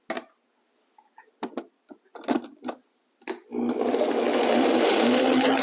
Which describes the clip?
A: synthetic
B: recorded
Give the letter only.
B